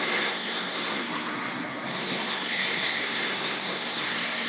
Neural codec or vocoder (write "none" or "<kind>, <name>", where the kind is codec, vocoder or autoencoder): codec, SNAC